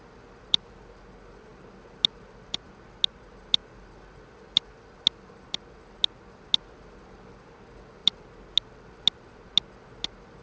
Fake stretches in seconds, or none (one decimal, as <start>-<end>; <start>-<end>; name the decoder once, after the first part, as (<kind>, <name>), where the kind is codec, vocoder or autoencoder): none